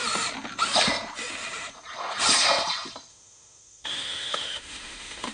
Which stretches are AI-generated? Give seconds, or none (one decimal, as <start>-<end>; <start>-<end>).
3.1-5.3